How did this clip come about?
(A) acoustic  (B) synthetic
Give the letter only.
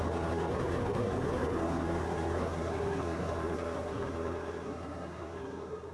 B